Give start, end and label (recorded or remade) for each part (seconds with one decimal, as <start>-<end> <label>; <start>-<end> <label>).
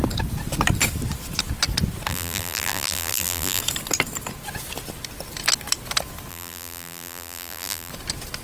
0.0-2.1 recorded; 2.1-3.6 remade; 3.6-6.3 recorded; 6.3-7.9 remade; 7.9-8.4 recorded